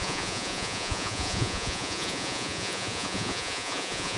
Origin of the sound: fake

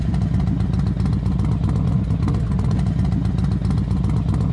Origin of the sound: real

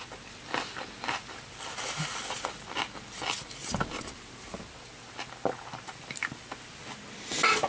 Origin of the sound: real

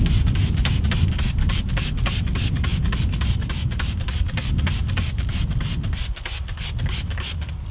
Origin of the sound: real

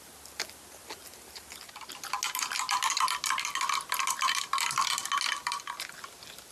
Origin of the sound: real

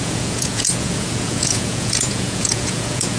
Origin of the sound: fake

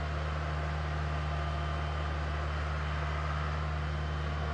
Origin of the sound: real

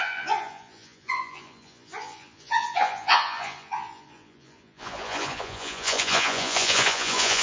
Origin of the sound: fake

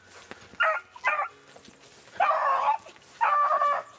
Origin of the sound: real